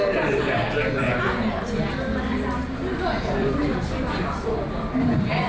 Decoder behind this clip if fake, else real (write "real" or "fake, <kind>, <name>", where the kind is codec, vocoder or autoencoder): fake, vocoder, BigVGAN v2